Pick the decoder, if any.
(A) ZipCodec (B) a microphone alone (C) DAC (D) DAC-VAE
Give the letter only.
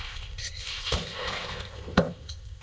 A